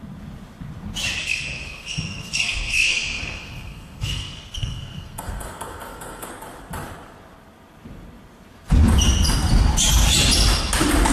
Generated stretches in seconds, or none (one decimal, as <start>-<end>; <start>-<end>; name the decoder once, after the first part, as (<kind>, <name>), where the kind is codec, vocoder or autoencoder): 1.2-6.3 (codec, SNAC)